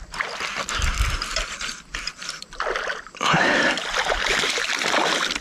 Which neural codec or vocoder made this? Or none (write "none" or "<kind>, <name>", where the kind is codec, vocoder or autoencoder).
vocoder, BigVGAN v2